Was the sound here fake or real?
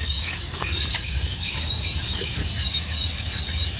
fake